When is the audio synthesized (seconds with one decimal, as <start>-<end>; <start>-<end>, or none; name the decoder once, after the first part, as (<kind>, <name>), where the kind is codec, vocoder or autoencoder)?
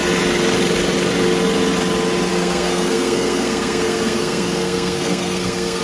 2.3-5.8 (codec, SNAC)